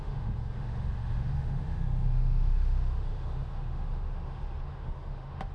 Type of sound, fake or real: fake